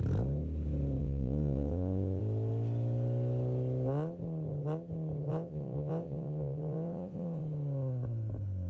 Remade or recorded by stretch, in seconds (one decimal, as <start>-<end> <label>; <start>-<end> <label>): 0.0-1.0 recorded; 1.0-2.2 remade; 2.2-5.3 recorded; 5.3-7.4 remade; 7.4-8.7 recorded

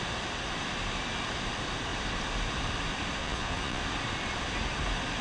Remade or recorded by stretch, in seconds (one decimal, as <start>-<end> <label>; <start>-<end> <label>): 0.0-3.2 recorded; 3.2-3.8 remade; 3.8-5.2 recorded

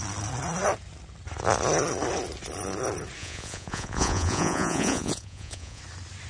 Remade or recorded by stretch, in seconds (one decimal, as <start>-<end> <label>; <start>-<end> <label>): 0.0-3.2 recorded; 3.2-5.8 remade; 5.8-6.3 recorded

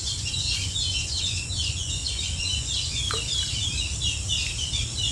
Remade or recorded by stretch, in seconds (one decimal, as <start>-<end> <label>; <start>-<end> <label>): 0.0-3.1 remade; 3.1-5.1 recorded

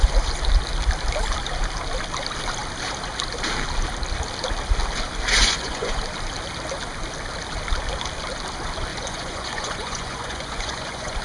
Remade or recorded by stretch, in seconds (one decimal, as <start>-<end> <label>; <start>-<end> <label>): 0.0-5.4 recorded; 5.4-6.0 remade; 6.0-8.9 recorded; 8.9-11.2 remade

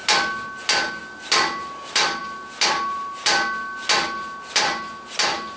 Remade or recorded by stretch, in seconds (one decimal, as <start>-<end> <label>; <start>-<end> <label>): 0.0-5.6 recorded